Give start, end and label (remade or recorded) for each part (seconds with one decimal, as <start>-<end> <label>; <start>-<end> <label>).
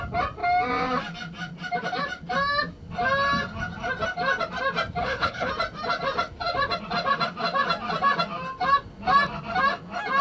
0.0-5.0 recorded; 5.0-5.5 remade; 5.5-10.2 recorded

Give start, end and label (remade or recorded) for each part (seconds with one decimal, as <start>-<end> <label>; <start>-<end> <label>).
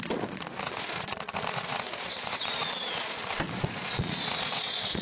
0.0-3.2 remade; 3.2-3.9 recorded; 3.9-5.0 remade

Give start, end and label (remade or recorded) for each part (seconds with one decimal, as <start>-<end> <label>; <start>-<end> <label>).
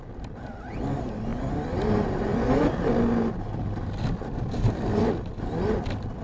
0.0-6.2 recorded